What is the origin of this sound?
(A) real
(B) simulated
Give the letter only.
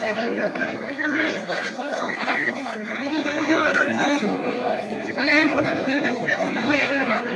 B